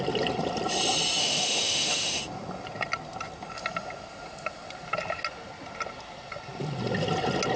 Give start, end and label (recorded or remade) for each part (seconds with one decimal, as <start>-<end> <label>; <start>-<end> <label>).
0.0-1.2 recorded; 1.2-2.2 remade; 2.2-7.6 recorded